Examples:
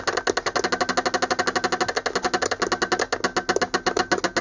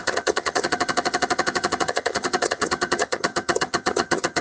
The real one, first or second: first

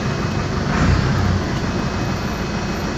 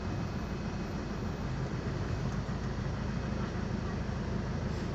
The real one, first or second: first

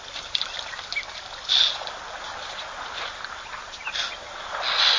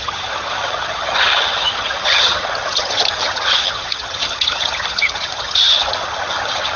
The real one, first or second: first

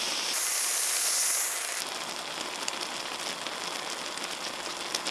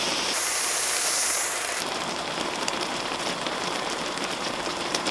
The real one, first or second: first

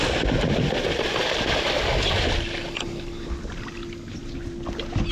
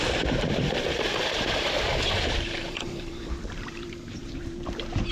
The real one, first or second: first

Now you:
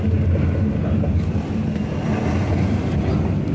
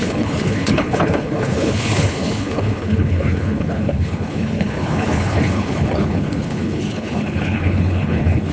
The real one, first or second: first